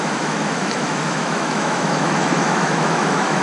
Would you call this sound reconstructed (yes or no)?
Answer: yes